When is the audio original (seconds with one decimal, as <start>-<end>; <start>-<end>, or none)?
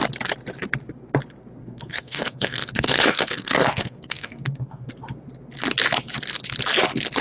0.0-1.6; 4.9-7.2